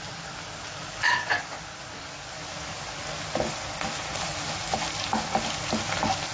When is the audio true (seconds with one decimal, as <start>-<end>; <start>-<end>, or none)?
0.0-0.8; 1.4-6.3